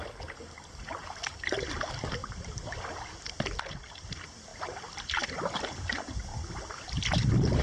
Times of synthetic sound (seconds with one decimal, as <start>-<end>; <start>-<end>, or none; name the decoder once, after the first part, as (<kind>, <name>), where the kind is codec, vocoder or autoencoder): 0.0-2.2 (vocoder, BigVGAN v2); 3.8-7.6